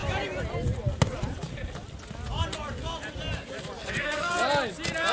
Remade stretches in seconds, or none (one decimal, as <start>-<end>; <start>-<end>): 3.8-4.3